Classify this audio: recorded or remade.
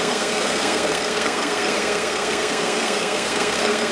remade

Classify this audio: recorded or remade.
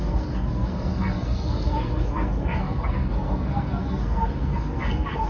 remade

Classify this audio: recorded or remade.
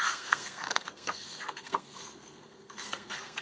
remade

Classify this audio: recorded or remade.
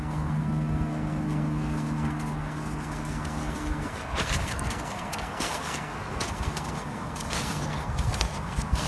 remade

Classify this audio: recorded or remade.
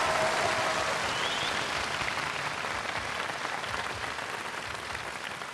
recorded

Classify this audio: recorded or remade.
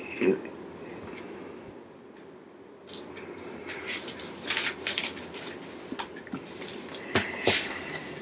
recorded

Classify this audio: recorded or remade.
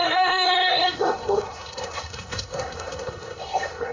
remade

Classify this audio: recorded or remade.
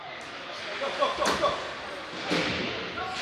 recorded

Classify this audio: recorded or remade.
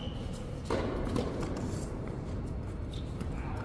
recorded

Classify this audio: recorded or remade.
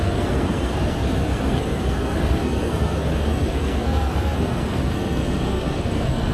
remade